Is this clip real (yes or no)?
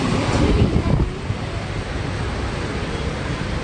no